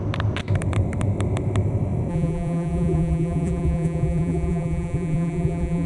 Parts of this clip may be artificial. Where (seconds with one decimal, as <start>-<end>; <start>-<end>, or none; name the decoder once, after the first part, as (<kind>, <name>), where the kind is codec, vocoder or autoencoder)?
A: 2.1-5.9 (vocoder, BigVGAN v2)